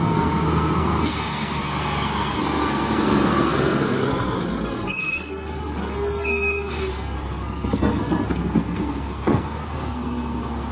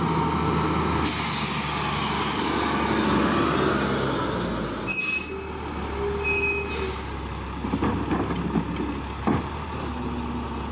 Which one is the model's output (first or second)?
first